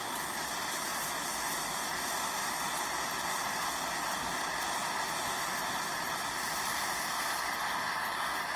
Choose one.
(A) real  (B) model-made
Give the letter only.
A